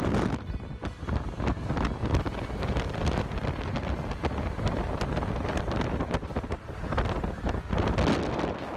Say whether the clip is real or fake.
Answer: real